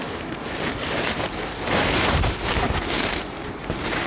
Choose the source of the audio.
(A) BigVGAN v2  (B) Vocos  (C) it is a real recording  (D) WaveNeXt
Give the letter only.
A